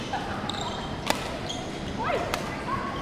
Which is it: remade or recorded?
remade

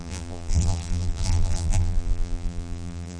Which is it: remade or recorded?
remade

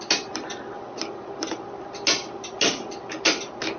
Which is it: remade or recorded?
recorded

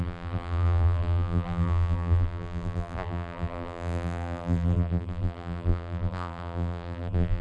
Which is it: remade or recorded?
remade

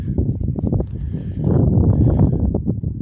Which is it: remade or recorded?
remade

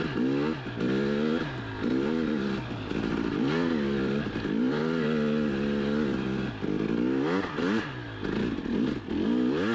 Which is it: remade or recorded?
recorded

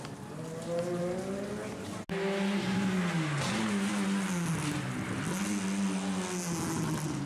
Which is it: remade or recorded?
recorded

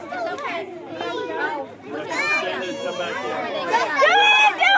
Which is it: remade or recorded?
remade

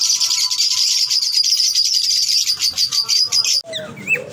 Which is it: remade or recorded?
recorded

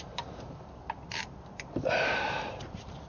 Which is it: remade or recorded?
remade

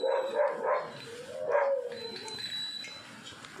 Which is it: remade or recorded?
recorded